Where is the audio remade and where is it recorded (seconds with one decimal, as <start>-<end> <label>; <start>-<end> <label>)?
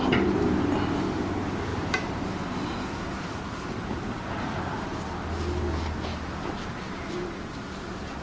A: 0.0-1.7 recorded; 1.7-4.5 remade; 4.5-6.1 recorded; 6.1-6.7 remade; 6.7-8.2 recorded